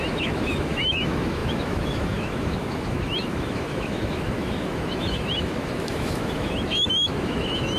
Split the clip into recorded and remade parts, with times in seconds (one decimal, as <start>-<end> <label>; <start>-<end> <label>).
0.0-7.8 remade